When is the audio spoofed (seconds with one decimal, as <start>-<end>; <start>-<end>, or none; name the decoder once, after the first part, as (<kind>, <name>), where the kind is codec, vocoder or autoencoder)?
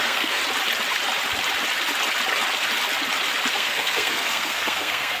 0.0-0.4 (codec, SNAC); 3.5-5.2